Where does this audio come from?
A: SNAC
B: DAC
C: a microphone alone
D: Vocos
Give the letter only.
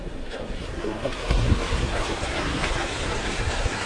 A